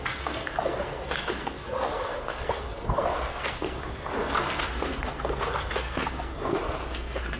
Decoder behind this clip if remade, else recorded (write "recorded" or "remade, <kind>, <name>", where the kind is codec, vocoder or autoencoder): remade, codec, SNAC